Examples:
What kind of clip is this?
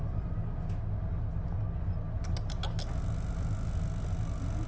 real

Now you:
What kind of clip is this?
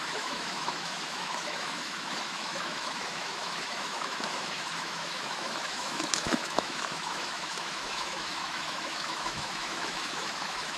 fake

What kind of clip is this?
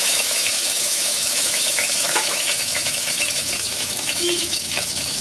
fake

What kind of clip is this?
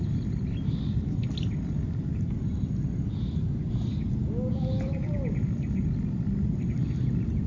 real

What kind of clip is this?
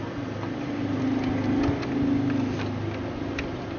real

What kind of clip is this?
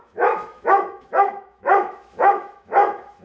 fake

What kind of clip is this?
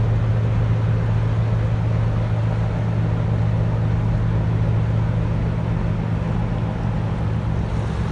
real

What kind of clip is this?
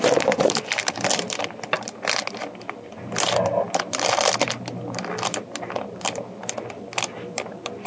real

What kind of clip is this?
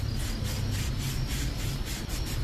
real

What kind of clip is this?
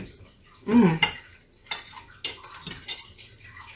real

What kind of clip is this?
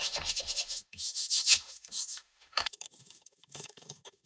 fake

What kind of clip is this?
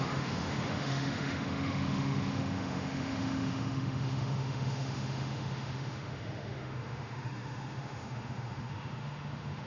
fake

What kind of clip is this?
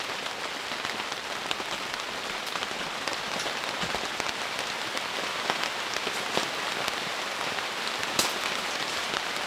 real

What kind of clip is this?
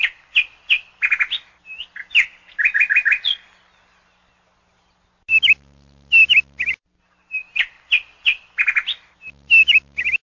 real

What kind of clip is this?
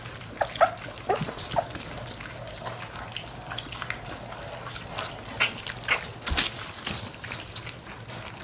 real